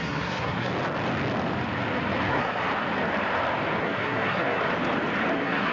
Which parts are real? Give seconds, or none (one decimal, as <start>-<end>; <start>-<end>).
0.7-2.3; 2.7-3.8; 4.6-5.3